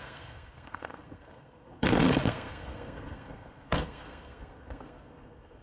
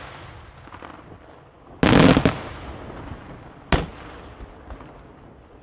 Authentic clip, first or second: second